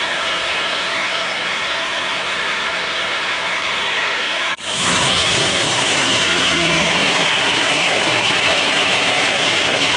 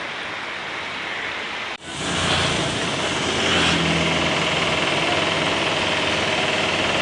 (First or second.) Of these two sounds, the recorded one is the second